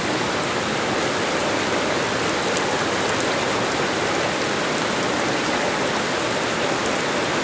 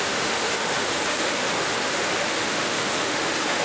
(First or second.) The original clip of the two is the first